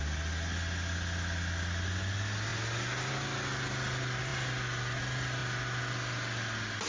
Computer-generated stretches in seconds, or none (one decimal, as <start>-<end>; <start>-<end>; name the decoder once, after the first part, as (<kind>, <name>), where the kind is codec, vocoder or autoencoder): none